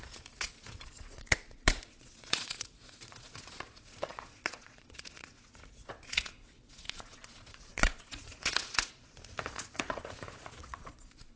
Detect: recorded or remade remade